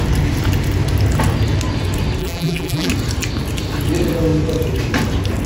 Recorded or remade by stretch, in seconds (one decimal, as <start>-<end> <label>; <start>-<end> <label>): 0.0-2.2 recorded; 2.2-2.9 remade; 2.9-5.5 recorded